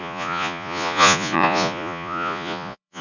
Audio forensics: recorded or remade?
remade